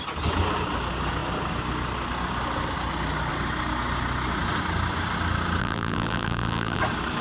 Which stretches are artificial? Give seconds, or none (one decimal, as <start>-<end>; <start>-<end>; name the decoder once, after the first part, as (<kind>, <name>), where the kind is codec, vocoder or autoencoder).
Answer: 5.6-6.8 (vocoder, BigVGAN v2)